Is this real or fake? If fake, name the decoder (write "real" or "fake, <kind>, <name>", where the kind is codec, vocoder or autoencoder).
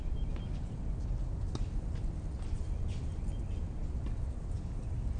real